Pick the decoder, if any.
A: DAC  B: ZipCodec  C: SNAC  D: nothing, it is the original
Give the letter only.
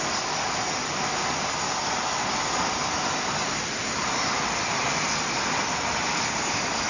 D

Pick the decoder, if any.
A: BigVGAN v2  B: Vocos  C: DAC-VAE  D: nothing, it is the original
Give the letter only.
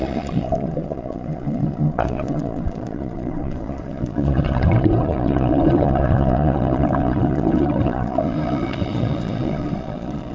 B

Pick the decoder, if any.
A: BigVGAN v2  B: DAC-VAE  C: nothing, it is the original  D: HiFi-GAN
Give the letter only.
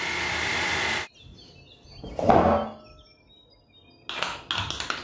C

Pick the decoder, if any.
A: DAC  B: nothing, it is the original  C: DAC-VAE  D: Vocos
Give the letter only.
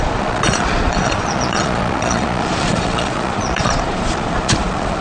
D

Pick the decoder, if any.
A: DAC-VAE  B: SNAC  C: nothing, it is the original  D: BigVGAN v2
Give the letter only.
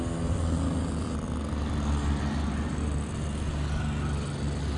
C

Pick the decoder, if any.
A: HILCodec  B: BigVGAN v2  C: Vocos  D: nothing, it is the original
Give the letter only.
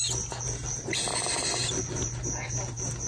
D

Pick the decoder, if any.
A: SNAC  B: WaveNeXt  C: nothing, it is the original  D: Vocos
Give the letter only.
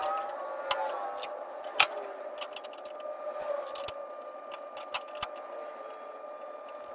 C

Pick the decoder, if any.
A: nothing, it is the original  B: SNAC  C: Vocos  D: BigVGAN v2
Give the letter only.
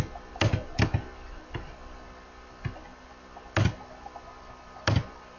A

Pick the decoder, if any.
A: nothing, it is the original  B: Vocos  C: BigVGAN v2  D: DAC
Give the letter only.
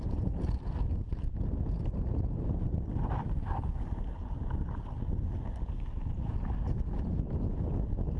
A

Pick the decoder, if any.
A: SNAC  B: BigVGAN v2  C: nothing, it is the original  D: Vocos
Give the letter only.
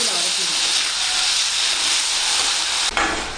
C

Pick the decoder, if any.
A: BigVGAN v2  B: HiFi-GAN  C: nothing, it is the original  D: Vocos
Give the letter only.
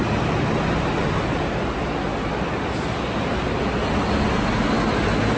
C